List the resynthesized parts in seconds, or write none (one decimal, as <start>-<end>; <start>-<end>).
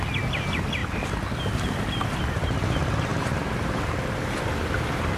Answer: none